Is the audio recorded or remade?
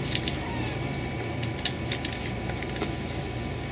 recorded